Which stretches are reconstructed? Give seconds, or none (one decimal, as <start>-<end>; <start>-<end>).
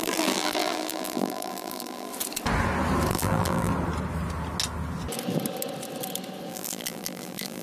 0.0-2.1; 3.1-3.7; 6.5-7.6